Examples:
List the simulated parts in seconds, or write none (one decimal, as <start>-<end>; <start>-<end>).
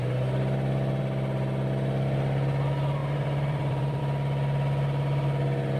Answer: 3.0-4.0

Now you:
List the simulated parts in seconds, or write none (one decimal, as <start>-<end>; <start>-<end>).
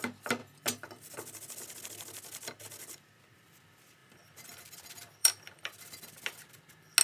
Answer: 0.4-1.6; 4.0-4.6; 5.2-6.5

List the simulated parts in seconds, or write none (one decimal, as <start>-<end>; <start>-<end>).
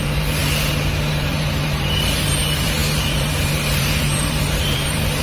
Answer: 0.0-0.4; 1.1-5.2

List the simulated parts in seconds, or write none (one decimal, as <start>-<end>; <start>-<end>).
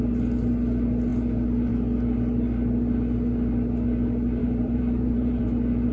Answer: 4.4-5.4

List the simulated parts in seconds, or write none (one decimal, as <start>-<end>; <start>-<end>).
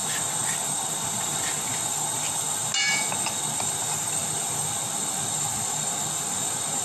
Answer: none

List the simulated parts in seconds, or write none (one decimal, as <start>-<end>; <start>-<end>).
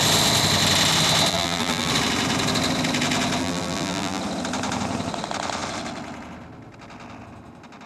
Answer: 1.3-1.9; 3.4-4.2